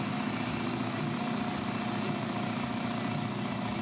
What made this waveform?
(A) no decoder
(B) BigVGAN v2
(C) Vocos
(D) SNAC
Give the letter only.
A